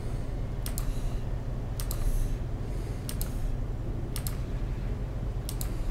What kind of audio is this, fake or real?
real